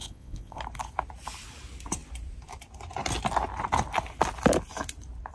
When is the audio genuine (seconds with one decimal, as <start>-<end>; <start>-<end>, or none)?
0.6-5.3